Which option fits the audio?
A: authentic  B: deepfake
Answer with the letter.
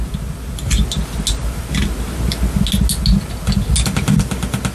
A